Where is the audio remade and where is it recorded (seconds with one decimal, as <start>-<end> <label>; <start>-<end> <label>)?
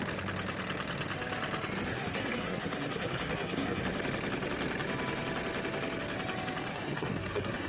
0.0-1.9 recorded; 1.9-3.8 remade; 3.8-6.7 recorded; 6.7-7.7 remade